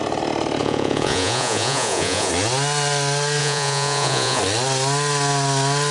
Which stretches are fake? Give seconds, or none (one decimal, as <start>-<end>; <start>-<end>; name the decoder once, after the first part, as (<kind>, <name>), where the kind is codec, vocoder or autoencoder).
0.6-2.3 (vocoder, Vocos); 3.4-4.4